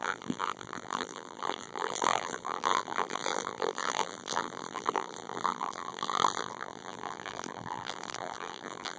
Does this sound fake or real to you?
fake